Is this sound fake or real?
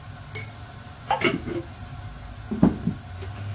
real